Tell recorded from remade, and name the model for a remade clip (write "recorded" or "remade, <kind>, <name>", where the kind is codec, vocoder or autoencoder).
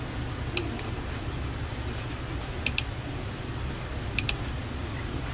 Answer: recorded